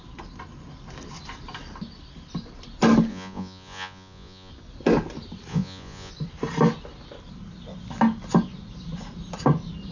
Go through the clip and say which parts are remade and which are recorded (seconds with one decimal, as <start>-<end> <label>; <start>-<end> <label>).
0.0-3.1 recorded; 3.1-4.5 remade; 4.5-5.5 recorded; 5.5-6.1 remade; 6.1-9.9 recorded